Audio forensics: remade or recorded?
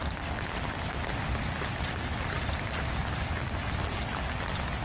recorded